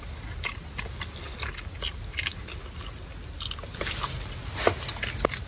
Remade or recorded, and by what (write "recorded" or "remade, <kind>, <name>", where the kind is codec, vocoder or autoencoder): recorded